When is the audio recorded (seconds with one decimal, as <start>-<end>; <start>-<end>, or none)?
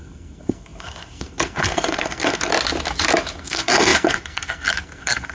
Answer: 2.5-3.4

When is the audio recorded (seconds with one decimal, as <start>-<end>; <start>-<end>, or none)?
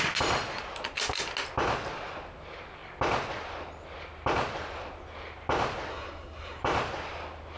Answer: 0.0-5.9; 6.6-7.6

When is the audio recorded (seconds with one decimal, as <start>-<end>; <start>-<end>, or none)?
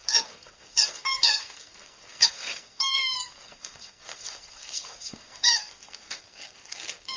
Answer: none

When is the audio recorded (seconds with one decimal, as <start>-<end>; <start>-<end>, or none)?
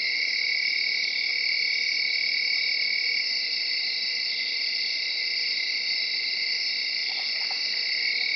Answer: 0.0-8.4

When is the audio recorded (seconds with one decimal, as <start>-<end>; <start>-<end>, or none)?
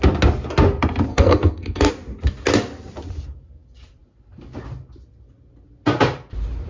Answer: 0.0-1.1; 1.9-6.7